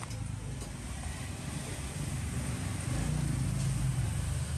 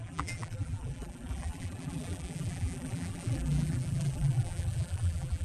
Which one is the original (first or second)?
first